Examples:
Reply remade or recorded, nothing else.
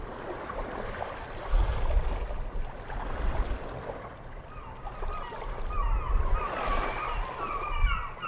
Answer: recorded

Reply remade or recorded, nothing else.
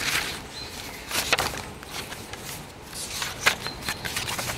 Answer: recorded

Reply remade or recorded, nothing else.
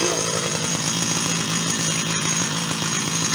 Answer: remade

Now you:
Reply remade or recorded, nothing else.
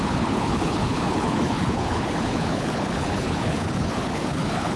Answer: remade